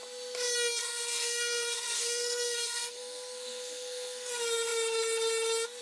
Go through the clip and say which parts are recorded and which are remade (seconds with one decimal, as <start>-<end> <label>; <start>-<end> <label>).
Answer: 0.0-0.8 recorded; 0.8-4.3 remade; 4.3-5.8 recorded